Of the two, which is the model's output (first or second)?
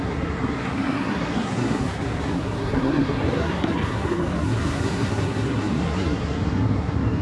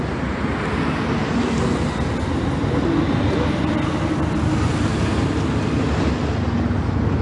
first